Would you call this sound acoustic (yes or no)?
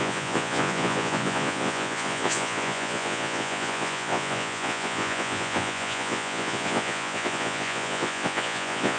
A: no